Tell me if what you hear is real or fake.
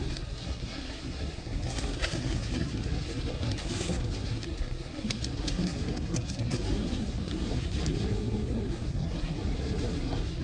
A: fake